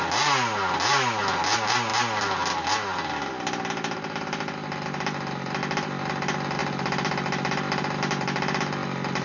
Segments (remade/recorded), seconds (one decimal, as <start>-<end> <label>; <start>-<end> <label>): 0.0-9.2 recorded